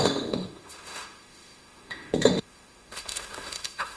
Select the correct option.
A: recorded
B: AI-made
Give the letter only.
B